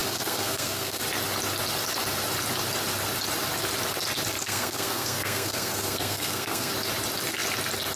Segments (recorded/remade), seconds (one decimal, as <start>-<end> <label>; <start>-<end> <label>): 0.0-1.0 remade; 1.0-4.4 recorded; 4.4-6.7 remade; 6.7-8.0 recorded